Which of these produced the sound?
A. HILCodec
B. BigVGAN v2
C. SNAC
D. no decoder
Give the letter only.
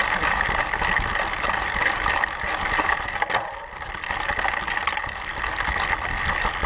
D